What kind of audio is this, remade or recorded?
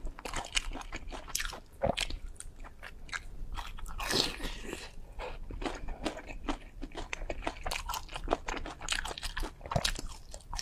recorded